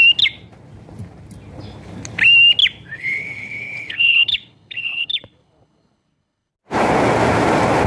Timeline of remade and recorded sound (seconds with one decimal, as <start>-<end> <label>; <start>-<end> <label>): 0.0-2.9 recorded; 2.9-6.5 remade; 6.5-7.9 recorded